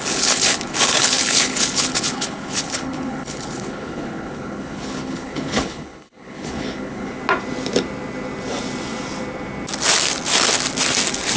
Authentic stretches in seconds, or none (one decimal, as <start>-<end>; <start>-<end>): 7.2-11.4